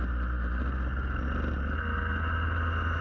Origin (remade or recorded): recorded